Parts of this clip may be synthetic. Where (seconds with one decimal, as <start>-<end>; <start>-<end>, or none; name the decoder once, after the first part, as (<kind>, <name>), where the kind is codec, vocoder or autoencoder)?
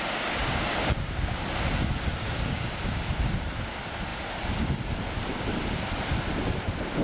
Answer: 0.4-1.4 (codec, DAC); 2.1-3.0